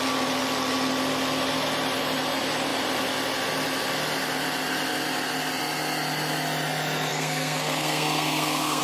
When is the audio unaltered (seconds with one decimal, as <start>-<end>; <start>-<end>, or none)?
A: 0.0-7.1